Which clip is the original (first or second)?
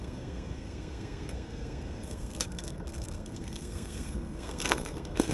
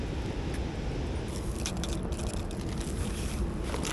second